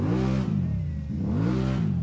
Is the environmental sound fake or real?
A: fake